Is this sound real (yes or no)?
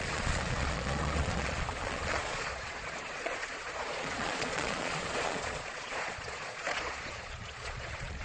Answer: no